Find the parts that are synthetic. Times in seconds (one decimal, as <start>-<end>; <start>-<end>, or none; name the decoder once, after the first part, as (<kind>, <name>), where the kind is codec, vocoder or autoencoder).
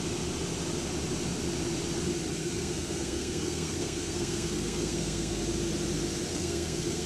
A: 2.4-5.4 (codec, SNAC); 6.3-7.1